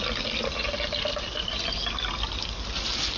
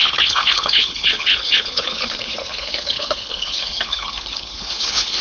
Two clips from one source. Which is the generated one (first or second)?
second